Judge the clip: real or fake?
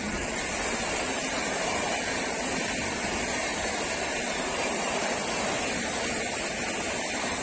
real